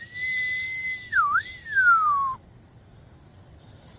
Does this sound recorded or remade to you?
recorded